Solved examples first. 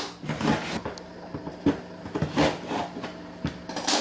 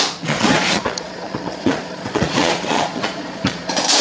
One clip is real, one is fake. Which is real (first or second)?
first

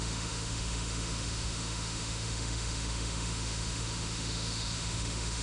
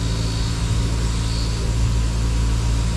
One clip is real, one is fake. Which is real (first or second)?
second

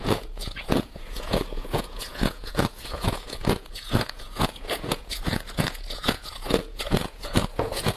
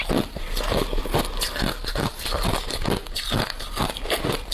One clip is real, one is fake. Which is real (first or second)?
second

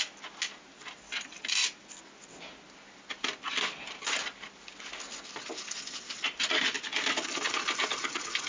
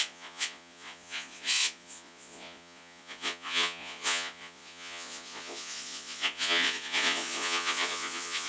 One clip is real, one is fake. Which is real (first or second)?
first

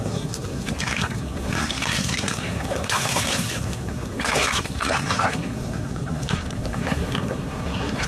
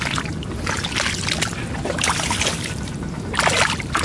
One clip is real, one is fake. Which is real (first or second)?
second